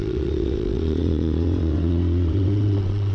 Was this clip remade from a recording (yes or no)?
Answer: yes